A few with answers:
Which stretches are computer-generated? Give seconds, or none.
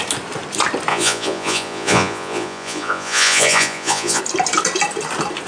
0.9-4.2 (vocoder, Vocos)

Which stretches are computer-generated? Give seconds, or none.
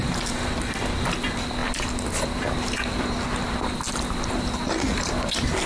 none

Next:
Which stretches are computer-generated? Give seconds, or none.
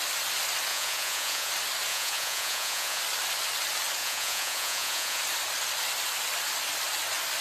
0.7-1.5 (vocoder, Vocos); 1.9-3.0; 4.0-5.2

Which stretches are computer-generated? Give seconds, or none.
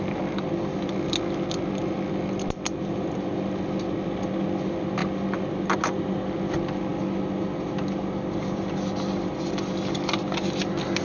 none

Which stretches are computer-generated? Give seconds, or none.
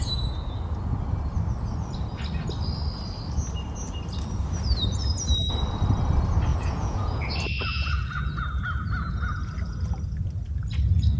6.5-7.2 (vocoder, Vocos); 7.7-8.4